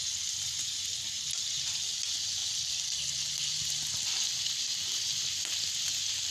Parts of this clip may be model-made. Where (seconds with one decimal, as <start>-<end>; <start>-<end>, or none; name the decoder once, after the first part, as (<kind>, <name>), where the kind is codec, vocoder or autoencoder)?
none